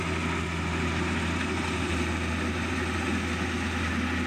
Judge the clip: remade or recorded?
recorded